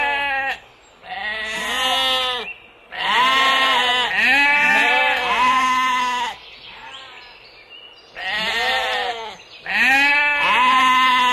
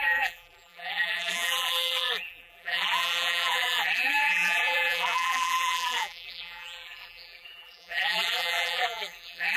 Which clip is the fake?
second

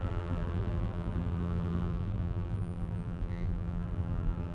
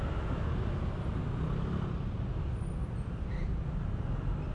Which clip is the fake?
first